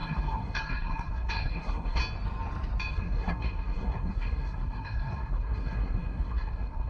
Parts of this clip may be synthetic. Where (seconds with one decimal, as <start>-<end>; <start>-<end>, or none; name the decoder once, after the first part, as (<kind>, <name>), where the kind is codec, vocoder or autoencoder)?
0.0-2.0 (codec, SNAC); 2.9-6.9